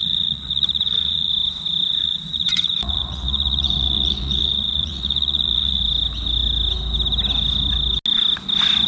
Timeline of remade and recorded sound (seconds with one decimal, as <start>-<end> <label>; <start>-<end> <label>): 0.0-1.3 remade; 1.3-1.9 recorded; 1.9-5.8 remade; 5.8-8.9 recorded

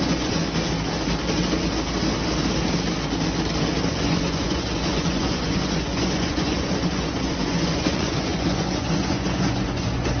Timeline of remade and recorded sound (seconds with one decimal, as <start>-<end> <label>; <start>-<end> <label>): 0.0-0.4 remade; 0.4-3.9 recorded; 3.9-10.2 remade

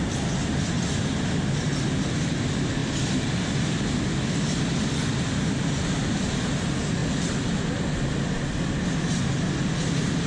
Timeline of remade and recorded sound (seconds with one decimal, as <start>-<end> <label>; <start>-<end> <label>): 0.0-10.3 recorded

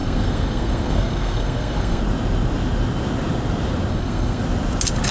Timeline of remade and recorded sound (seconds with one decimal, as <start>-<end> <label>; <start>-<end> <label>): 0.0-2.0 remade; 2.0-3.9 recorded; 3.9-4.4 remade; 4.4-5.1 recorded